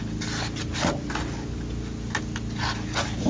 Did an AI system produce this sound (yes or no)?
no